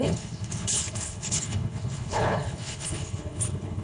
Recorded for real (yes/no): no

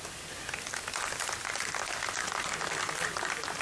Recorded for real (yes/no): yes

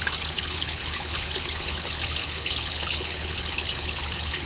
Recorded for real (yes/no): no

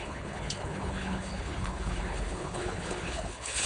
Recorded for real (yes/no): no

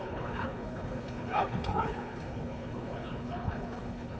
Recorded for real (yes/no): no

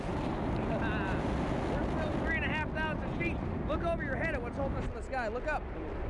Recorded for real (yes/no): yes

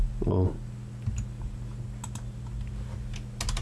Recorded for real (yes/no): yes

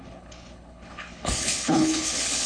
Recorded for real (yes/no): no